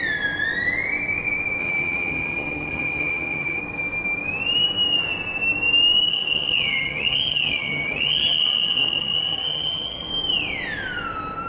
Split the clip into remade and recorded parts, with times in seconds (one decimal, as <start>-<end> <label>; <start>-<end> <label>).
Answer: 0.0-1.6 recorded; 1.6-3.6 remade; 3.6-6.1 recorded; 6.1-10.1 remade; 10.1-11.5 recorded

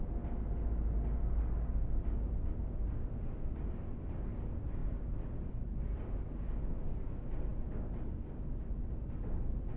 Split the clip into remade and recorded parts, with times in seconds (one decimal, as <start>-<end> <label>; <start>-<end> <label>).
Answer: 0.0-9.8 recorded

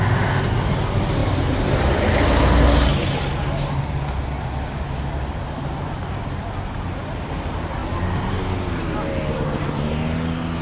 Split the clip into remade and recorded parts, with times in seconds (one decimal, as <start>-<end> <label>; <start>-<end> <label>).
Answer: 0.0-10.6 recorded

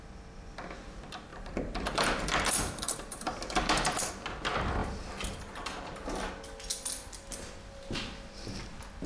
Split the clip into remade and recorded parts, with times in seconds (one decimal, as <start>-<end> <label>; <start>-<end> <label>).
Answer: 0.0-1.3 recorded; 1.3-4.1 remade; 4.1-4.8 recorded; 4.8-6.3 remade; 6.3-9.1 recorded

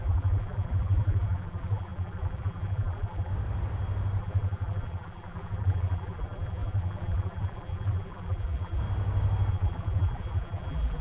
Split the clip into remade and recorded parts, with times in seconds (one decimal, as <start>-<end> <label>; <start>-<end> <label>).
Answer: 0.0-3.3 remade; 3.3-4.2 recorded; 4.2-8.8 remade; 8.8-9.5 recorded; 9.5-11.0 remade

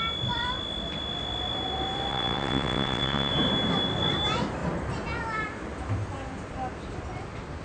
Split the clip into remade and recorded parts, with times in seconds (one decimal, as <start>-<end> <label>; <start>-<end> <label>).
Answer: 0.0-2.1 recorded; 2.1-3.3 remade; 3.3-7.6 recorded